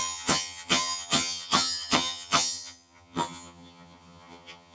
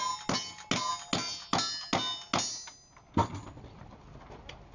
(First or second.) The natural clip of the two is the second